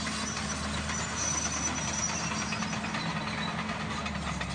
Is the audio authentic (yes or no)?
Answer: yes